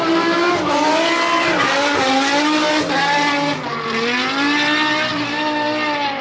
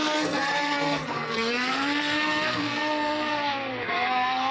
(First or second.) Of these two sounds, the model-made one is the second